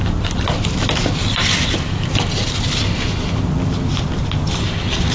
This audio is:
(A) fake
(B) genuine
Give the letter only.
B